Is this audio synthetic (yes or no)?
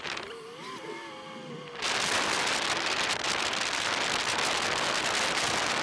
yes